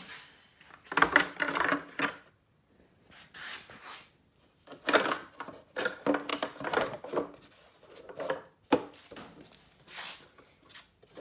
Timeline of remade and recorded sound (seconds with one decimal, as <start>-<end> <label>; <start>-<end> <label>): 0.0-6.3 recorded; 6.3-7.0 remade; 7.0-11.2 recorded